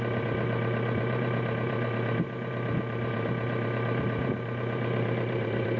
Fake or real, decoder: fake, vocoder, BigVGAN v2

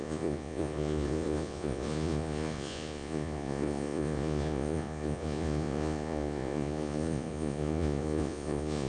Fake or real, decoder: fake, vocoder, Vocos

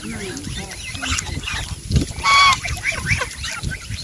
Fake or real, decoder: real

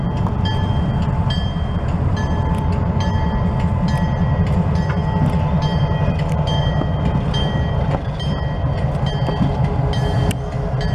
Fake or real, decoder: real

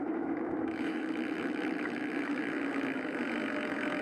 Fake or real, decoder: fake, autoencoder, DAC-VAE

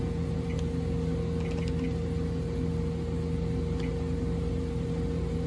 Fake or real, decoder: real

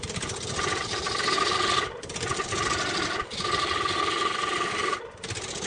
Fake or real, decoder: real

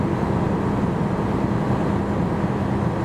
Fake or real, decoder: real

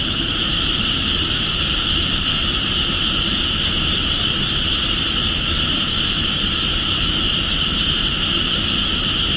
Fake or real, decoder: fake, vocoder, BigVGAN v2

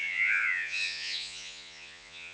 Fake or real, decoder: fake, vocoder, Vocos